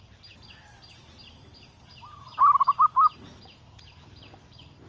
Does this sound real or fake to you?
real